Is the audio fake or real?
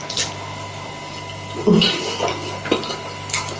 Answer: real